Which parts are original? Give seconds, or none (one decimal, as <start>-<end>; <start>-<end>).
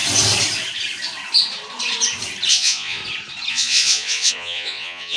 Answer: 0.0-2.5; 3.0-3.5